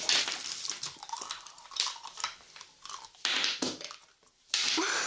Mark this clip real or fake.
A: fake